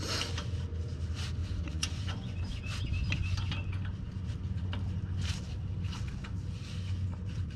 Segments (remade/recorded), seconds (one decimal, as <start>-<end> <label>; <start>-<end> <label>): 0.0-1.4 recorded; 1.4-2.4 remade; 2.4-7.6 recorded

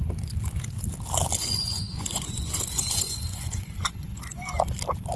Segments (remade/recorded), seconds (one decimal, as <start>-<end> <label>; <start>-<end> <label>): 0.0-1.4 recorded; 1.4-4.5 remade; 4.5-5.2 recorded

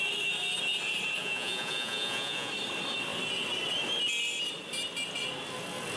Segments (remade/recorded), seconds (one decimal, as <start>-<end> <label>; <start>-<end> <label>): 0.0-1.2 recorded; 1.2-2.5 remade; 2.5-6.0 recorded

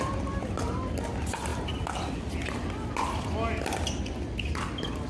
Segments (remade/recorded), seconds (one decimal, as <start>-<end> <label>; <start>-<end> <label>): 0.0-5.1 recorded

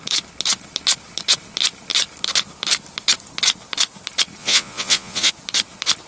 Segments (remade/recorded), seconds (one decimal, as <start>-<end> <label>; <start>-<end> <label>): 0.0-4.4 recorded; 4.4-5.3 remade; 5.3-6.1 recorded

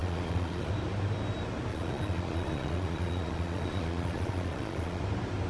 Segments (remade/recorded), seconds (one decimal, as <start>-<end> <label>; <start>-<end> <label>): 0.0-0.7 remade; 0.7-1.7 recorded; 1.7-5.0 remade; 5.0-5.5 recorded

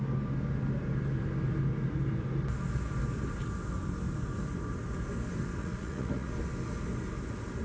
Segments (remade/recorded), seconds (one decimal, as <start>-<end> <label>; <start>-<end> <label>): 0.0-5.6 recorded; 5.6-6.3 remade; 6.3-7.6 recorded

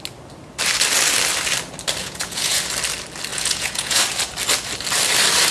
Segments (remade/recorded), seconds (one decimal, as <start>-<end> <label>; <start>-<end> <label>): 0.0-2.0 recorded; 2.0-2.6 remade; 2.6-3.3 recorded; 3.3-4.0 remade; 4.0-5.5 recorded